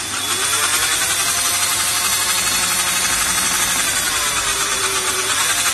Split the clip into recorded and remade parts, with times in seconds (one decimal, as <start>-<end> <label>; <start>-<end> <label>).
0.0-4.5 recorded; 4.5-5.2 remade; 5.2-5.7 recorded